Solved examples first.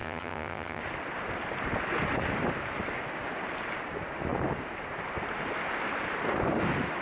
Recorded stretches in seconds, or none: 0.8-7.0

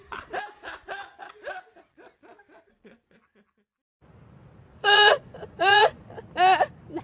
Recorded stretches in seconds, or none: 0.0-4.7; 6.0-7.0

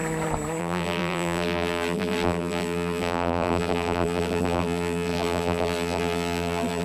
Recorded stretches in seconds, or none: 0.0-0.6

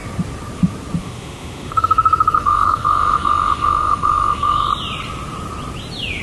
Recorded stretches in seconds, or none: 0.0-1.0; 4.7-6.2